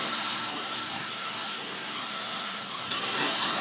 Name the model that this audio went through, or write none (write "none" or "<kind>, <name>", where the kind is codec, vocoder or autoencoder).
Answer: codec, SNAC